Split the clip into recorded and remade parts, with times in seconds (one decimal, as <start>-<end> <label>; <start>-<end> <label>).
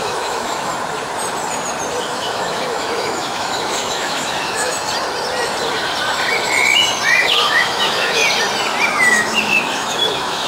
0.0-0.7 remade; 0.7-2.1 recorded; 2.1-4.7 remade; 4.7-7.2 recorded; 7.2-8.2 remade; 8.2-9.1 recorded; 9.1-10.5 remade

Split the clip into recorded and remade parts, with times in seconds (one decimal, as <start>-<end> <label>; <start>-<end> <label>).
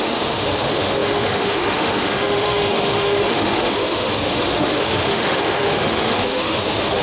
0.0-7.0 remade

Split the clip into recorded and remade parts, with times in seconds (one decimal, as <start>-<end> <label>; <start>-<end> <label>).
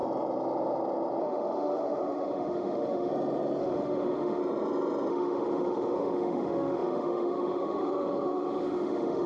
0.0-1.2 recorded; 1.2-3.1 remade; 3.1-3.6 recorded; 3.6-4.4 remade; 4.4-5.1 recorded; 5.1-9.3 remade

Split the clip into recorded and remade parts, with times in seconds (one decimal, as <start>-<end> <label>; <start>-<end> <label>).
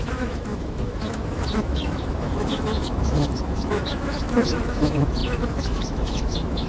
0.0-6.7 remade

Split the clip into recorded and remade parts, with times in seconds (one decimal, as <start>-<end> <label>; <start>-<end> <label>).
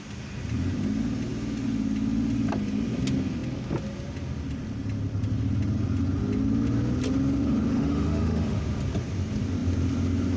0.0-7.7 recorded; 7.7-8.6 remade; 8.6-10.4 recorded